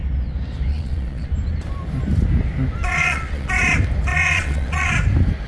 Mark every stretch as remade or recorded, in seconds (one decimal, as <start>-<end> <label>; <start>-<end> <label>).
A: 0.0-0.7 recorded; 0.7-1.3 remade; 1.3-2.9 recorded; 2.9-3.5 remade; 3.5-4.1 recorded; 4.1-4.9 remade; 4.9-5.5 recorded